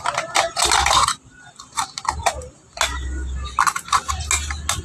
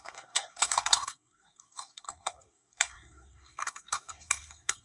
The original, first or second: first